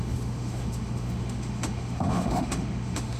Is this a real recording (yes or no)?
no